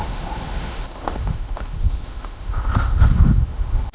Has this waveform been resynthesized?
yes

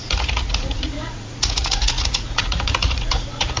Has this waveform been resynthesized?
yes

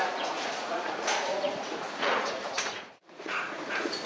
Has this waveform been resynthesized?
yes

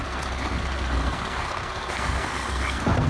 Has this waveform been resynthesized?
yes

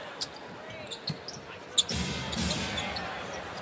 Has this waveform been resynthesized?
no